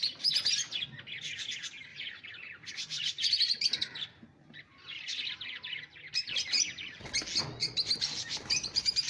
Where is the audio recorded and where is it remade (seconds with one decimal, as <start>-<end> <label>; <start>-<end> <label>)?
0.0-0.8 remade; 0.8-1.9 recorded; 1.9-5.0 remade; 5.0-7.6 recorded; 7.6-9.1 remade